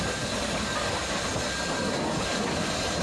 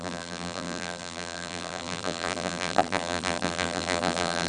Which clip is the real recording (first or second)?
first